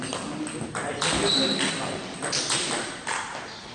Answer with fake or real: real